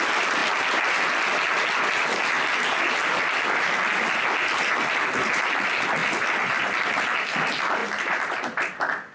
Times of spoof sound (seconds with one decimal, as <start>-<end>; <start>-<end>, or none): none